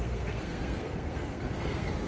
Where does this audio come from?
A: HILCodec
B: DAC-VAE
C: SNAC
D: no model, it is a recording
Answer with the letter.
C